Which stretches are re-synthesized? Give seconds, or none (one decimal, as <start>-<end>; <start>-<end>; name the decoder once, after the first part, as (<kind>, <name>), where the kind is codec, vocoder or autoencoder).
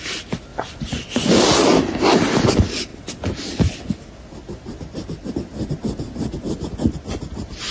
0.5-1.4 (vocoder, Vocos)